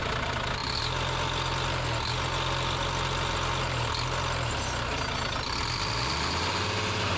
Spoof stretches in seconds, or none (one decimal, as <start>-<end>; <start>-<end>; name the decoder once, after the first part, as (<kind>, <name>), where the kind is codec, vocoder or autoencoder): none